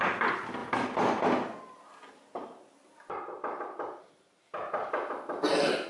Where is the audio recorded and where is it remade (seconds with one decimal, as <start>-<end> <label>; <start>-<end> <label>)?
0.0-5.9 recorded